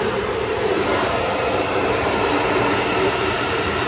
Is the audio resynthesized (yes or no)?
yes